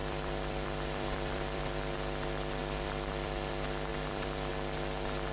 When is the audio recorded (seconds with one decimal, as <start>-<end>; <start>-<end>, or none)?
1.6-2.6; 3.5-3.9; 4.5-5.3